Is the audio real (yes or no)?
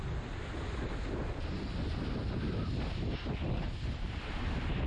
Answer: yes